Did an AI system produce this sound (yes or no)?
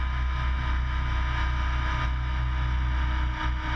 no